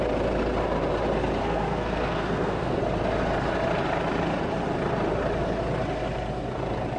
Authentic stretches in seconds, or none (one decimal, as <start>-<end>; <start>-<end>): 0.0-1.4; 2.8-7.0